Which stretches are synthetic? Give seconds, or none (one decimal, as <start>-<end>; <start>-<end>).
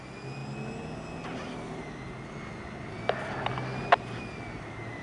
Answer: none